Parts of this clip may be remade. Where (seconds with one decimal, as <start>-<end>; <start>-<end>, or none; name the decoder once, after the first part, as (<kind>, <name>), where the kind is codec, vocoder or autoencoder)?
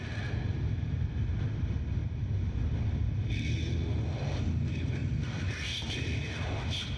none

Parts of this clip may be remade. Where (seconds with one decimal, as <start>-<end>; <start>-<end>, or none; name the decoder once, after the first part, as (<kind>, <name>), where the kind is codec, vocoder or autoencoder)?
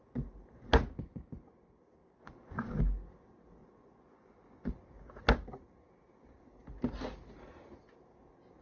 2.2-2.8 (vocoder, Vocos); 3.6-4.7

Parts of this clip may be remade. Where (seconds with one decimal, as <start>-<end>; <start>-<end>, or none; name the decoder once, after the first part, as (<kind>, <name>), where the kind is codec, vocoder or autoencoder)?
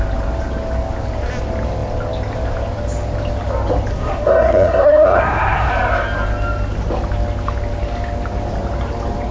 3.9-5.7 (codec, SNAC)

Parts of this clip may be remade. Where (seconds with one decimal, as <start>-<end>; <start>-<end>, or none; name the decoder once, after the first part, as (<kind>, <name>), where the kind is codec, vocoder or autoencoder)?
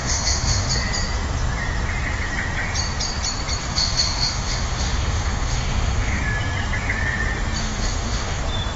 0.0-0.7 (autoencoder, DAC-VAE); 3.6-6.2; 7.6-8.4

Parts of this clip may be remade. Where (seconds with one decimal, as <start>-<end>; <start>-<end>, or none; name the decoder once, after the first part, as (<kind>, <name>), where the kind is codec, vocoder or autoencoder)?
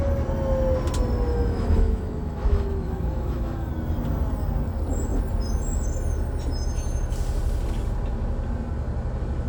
1.3-3.7 (autoencoder, DAC-VAE)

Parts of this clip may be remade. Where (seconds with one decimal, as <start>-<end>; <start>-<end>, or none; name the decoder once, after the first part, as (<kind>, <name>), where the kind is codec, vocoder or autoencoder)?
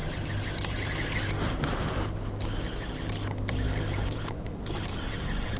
3.4-5.6 (vocoder, BigVGAN v2)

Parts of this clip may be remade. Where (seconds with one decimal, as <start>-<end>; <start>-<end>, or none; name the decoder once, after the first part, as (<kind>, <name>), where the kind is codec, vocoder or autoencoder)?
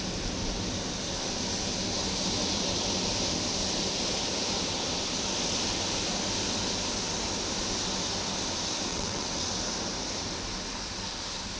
8.9-9.5 (vocoder, WaveNeXt)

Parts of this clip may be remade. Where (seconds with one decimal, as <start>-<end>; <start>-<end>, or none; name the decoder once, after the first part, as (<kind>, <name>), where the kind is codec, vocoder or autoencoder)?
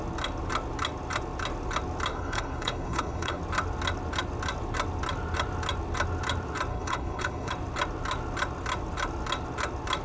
2.1-3.4 (codec, HILCodec); 6.7-7.5